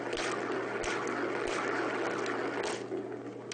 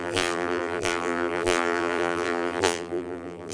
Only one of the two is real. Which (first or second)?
first